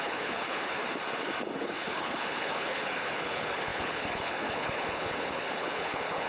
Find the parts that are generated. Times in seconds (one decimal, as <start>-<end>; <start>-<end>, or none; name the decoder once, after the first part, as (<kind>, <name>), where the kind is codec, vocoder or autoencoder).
0.0-0.8 (codec, HILCodec); 1.6-6.3